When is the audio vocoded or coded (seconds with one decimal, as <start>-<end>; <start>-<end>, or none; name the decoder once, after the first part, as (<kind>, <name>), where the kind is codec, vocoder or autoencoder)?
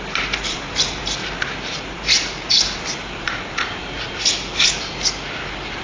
none